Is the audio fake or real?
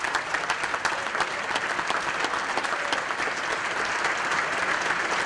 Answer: real